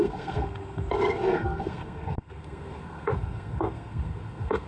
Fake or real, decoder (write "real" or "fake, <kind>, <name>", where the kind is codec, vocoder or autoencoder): fake, codec, SNAC